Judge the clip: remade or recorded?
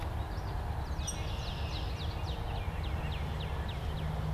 recorded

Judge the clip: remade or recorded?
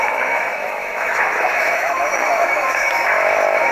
remade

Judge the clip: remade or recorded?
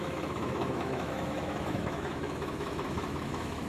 remade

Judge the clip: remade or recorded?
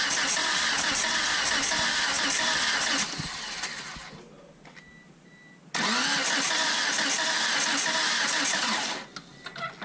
recorded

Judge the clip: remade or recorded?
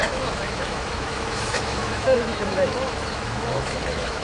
remade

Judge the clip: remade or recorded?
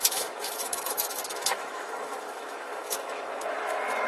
remade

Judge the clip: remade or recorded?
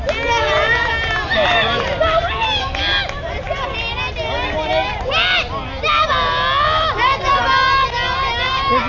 recorded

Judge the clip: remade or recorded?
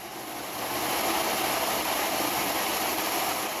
recorded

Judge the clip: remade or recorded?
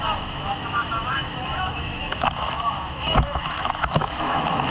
remade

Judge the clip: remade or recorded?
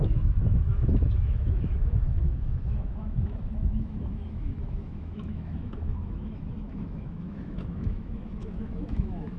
remade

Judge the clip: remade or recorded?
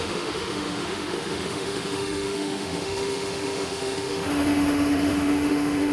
remade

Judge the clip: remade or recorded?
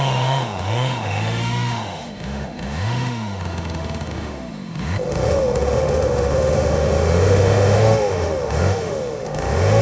remade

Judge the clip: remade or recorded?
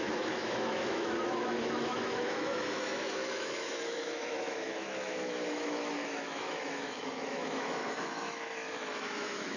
remade